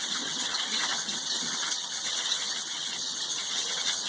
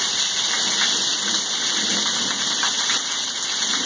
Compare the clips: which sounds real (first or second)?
second